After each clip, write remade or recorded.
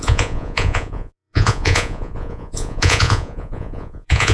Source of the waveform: remade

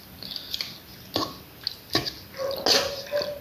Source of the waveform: recorded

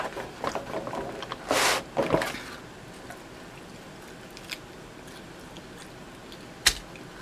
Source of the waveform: recorded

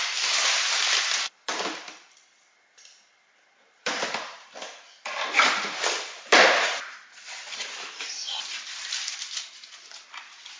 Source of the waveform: remade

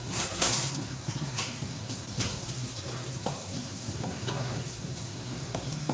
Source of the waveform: remade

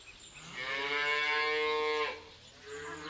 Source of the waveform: recorded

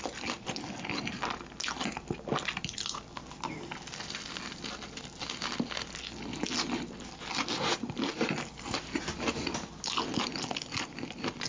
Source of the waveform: recorded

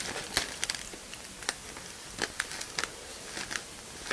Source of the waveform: recorded